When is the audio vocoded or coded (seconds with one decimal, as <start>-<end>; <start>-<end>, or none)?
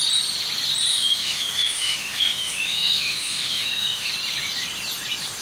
0.9-4.1